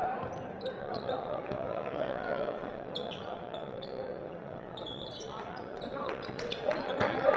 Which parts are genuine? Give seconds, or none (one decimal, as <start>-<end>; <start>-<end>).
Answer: 0.0-0.8